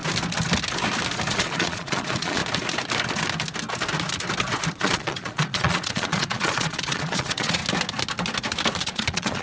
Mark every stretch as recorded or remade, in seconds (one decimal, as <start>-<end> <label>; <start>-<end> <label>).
0.0-1.3 recorded; 1.3-2.4 remade; 2.4-4.7 recorded; 4.7-7.6 remade; 7.6-8.8 recorded; 8.8-9.4 remade